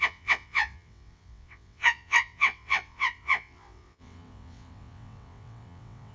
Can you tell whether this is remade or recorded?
remade